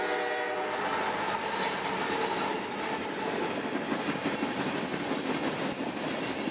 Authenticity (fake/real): real